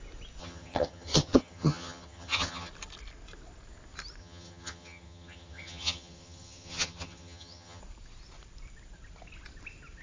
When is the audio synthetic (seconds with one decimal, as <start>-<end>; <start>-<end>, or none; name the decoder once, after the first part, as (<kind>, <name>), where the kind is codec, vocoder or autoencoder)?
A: 0.4-2.7 (vocoder, HiFi-GAN); 4.2-7.8